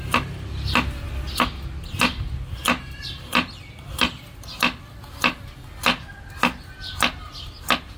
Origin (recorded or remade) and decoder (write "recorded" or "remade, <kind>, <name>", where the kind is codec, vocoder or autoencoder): recorded